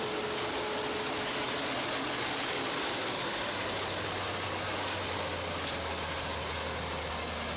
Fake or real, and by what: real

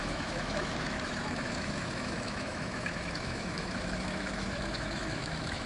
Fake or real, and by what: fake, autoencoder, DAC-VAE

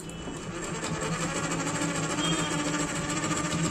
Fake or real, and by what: real